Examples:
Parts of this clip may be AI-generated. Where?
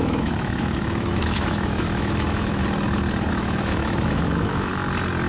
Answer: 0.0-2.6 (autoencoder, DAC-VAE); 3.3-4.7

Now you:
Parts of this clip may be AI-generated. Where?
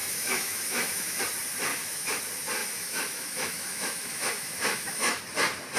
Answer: 0.0-1.2 (autoencoder, DAC-VAE); 1.7-2.2; 2.6-5.2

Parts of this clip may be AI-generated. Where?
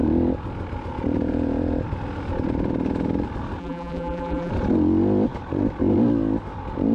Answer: 3.6-4.5 (vocoder, BigVGAN v2)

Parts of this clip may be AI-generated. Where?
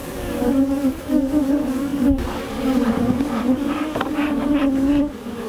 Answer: 0.0-5.5 (codec, DAC)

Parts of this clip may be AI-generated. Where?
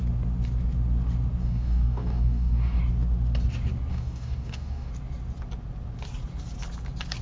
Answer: 1.4-2.8 (codec, DAC); 3.9-4.9